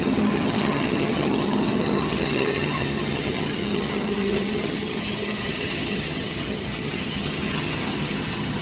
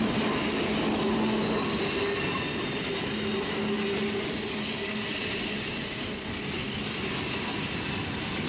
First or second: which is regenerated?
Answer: first